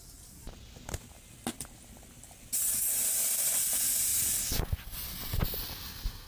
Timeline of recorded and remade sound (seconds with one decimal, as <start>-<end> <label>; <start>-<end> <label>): 0.0-6.3 recorded